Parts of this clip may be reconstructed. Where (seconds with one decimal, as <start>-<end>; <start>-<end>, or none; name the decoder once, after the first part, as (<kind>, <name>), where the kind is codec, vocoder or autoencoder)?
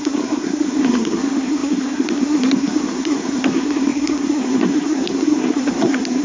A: 0.0-6.2 (codec, SNAC)